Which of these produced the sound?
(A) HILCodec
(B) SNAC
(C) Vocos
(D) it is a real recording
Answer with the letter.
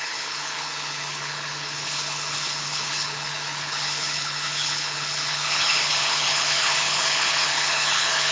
A